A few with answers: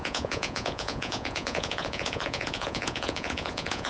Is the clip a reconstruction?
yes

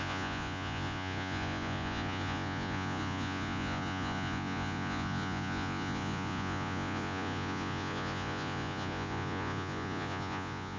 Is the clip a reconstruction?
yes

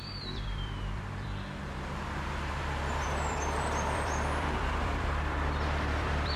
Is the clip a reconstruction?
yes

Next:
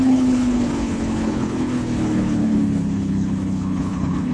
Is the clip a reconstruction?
yes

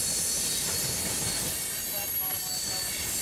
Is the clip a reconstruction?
no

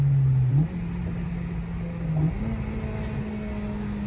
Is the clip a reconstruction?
no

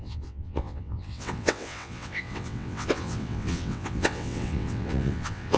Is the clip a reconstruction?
yes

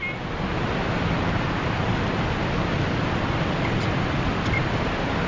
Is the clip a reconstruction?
no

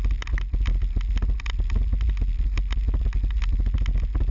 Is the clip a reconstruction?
no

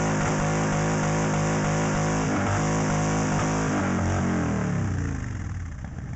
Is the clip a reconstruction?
no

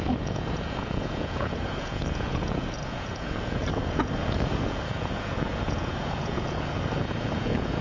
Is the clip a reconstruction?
yes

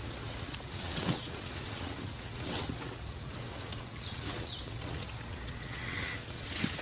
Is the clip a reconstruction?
yes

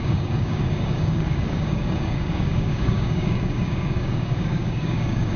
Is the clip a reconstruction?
yes